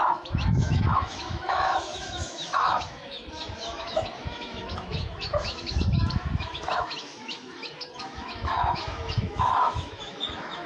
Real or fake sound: fake